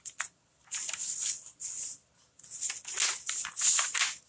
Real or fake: real